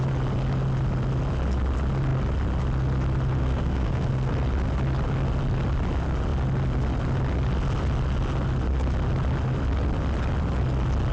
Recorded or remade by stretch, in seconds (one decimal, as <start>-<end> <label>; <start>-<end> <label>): 0.0-3.4 recorded; 3.4-4.3 remade; 4.3-11.1 recorded